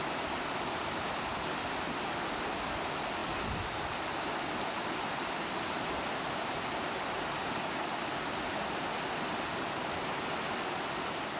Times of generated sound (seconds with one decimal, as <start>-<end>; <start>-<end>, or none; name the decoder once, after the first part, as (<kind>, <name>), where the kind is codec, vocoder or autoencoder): none